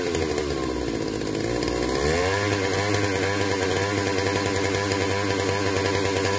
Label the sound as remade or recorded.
recorded